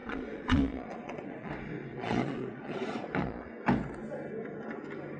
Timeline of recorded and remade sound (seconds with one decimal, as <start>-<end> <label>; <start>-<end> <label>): 0.0-1.5 remade; 1.5-1.9 recorded; 1.9-3.5 remade; 3.5-5.2 recorded